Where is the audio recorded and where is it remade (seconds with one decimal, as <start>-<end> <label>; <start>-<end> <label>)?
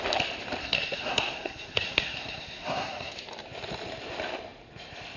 0.0-0.6 recorded; 0.6-3.1 remade; 3.1-5.2 recorded